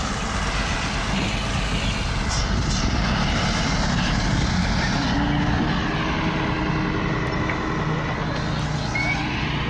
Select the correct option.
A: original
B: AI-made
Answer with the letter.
A